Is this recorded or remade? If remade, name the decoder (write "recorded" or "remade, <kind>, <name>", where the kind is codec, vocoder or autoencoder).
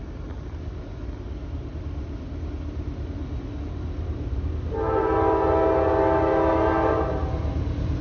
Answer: recorded